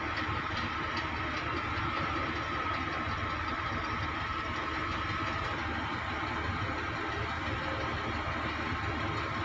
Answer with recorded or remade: recorded